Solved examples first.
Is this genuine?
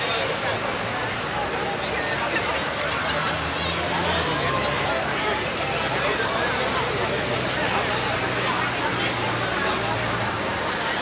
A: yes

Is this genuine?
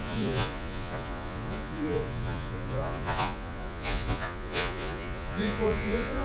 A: no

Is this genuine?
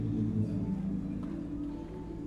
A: yes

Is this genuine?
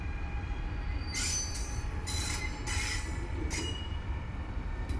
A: yes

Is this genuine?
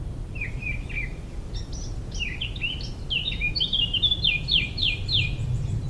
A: yes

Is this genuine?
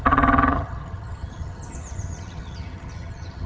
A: no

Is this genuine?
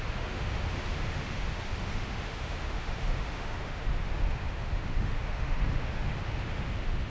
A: no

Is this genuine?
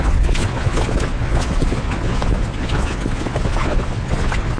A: no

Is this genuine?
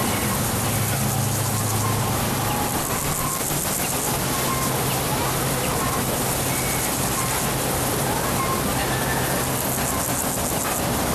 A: yes